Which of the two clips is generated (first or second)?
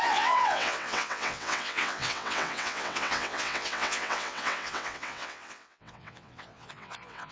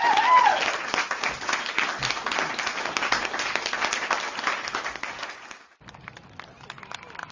first